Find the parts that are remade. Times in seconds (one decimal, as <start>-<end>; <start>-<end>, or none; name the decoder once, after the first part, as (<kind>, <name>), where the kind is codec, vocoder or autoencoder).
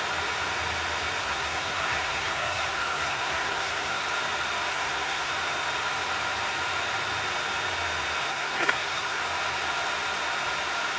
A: 1.2-4.0 (codec, SNAC); 4.7-5.3; 8.3-9.2